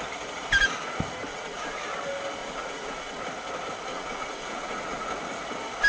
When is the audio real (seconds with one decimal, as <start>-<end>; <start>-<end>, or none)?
0.0-1.3; 1.8-2.4; 3.2-3.9; 5.1-5.9